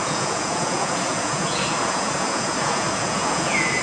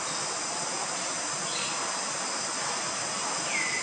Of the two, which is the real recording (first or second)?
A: second